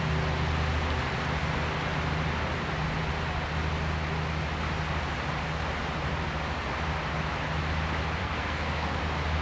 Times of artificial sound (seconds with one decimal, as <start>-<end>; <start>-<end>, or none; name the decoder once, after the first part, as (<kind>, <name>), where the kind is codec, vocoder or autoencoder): 8.2-9.0 (codec, SNAC)